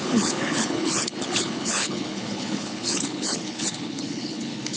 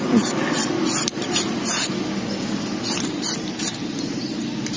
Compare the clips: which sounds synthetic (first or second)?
first